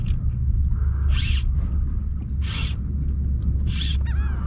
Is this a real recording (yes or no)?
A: yes